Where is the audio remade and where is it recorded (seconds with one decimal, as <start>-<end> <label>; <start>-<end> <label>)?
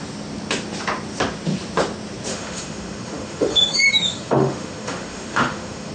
0.0-2.3 recorded; 2.3-5.9 remade